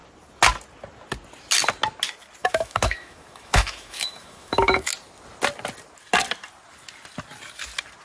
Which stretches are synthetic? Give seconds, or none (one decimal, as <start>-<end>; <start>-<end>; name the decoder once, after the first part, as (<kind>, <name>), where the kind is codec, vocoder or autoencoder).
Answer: 2.4-4.9 (autoencoder, DAC-VAE)